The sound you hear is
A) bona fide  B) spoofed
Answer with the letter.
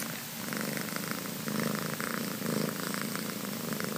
A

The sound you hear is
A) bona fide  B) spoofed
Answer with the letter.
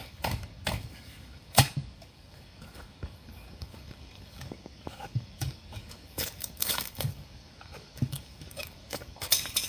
B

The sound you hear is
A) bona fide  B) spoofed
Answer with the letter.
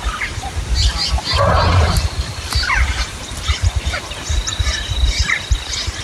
B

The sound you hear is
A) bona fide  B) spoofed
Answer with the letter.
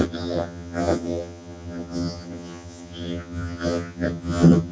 B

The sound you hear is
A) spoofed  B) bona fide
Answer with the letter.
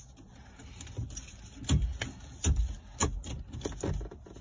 B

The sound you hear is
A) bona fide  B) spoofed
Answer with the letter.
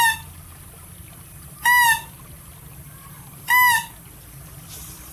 A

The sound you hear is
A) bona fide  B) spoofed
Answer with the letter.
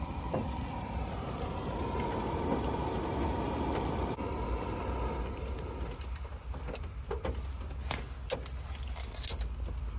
A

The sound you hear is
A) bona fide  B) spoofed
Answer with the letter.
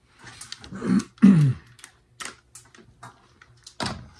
A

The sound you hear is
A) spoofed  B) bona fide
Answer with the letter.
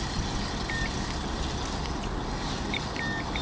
B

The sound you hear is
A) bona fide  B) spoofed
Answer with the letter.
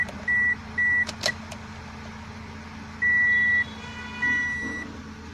A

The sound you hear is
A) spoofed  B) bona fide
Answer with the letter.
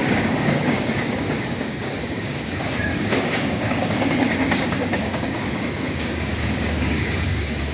A